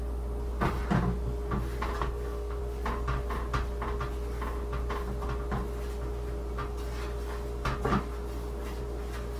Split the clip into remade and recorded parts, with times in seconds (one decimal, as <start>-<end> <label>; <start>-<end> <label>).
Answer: 0.0-2.0 recorded; 2.0-2.6 remade; 2.6-9.4 recorded